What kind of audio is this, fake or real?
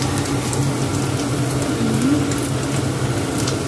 real